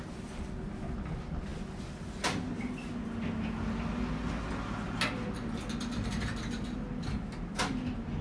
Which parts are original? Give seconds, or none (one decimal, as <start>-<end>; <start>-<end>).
0.0-8.2